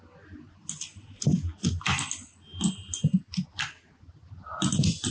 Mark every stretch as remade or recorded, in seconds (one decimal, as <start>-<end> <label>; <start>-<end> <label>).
0.0-5.1 recorded